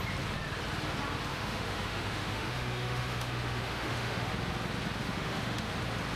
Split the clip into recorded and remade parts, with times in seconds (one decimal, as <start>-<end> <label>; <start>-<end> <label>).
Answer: 0.0-1.3 recorded; 1.3-4.3 remade; 4.3-5.0 recorded; 5.0-5.7 remade; 5.7-6.2 recorded